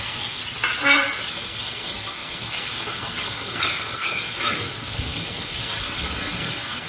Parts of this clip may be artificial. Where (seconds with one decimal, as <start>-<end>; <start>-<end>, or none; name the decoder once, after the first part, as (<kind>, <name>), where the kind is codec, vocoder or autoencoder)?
0.0-0.4 (codec, SNAC); 1.3-6.9